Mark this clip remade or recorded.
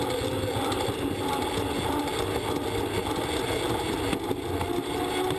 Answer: recorded